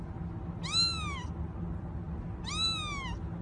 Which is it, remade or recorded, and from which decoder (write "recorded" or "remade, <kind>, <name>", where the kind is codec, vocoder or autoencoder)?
recorded